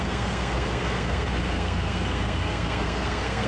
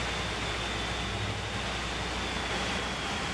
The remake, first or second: first